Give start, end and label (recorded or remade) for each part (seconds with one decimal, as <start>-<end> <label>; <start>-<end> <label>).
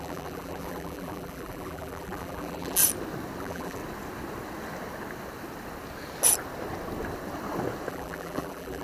0.0-2.8 remade; 2.8-3.4 recorded; 3.4-3.8 remade; 3.8-7.9 recorded; 7.9-8.8 remade